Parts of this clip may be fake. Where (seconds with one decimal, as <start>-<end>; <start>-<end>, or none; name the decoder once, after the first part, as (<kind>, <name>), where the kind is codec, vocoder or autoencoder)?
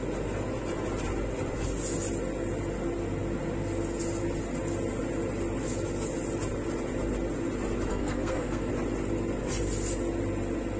7.9-8.7 (codec, SNAC)